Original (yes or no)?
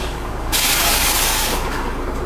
no